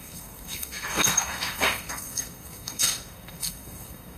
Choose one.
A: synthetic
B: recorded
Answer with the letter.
A